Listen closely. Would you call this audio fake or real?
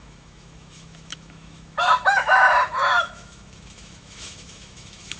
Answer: fake